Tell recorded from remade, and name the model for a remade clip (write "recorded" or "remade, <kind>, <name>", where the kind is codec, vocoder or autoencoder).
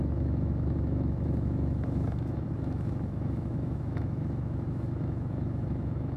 remade, autoencoder, DAC-VAE